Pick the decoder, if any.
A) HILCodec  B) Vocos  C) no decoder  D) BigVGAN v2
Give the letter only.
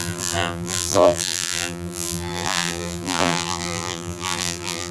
D